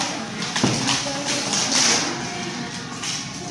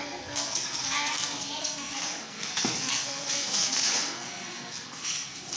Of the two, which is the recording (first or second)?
first